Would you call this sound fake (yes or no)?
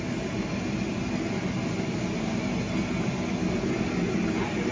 no